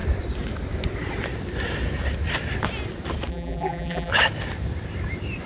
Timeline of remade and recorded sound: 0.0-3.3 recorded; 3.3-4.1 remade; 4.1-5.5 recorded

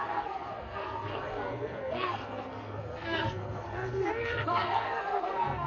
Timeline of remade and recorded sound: 0.0-5.7 remade

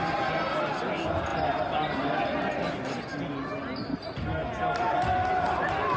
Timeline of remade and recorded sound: 0.0-6.0 recorded

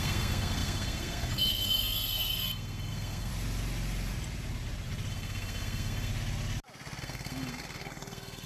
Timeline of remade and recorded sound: 0.0-3.3 remade; 3.3-5.1 recorded; 5.1-6.1 remade; 6.1-7.0 recorded; 7.0-8.5 remade

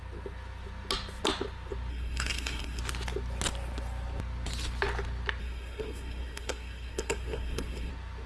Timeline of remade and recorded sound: 0.0-1.9 recorded; 1.9-2.8 remade; 2.8-5.4 recorded; 5.4-7.9 remade; 7.9-8.3 recorded

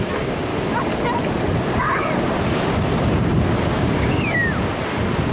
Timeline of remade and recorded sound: 0.0-0.5 remade; 0.5-3.7 recorded; 3.7-4.4 remade; 4.4-5.3 recorded